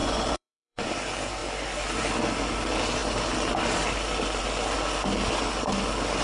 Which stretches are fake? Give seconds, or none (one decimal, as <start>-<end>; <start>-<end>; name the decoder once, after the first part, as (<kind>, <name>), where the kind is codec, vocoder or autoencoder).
0.0-0.9 (vocoder, Vocos)